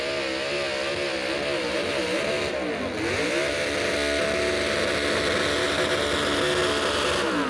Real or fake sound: real